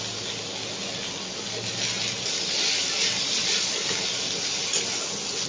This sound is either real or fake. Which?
real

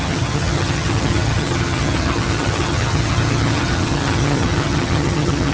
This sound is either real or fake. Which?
fake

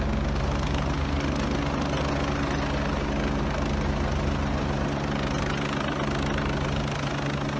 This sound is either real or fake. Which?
real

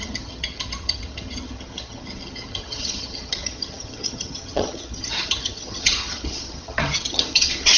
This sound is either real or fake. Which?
fake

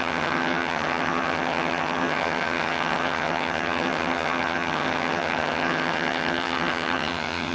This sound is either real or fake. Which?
fake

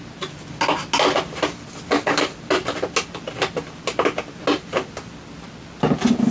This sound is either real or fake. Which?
real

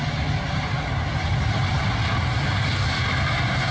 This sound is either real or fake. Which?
real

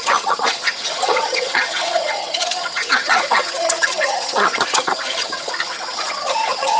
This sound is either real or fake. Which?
fake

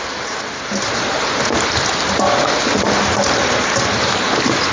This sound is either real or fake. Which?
real